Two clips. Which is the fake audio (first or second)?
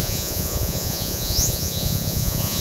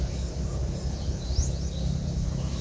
first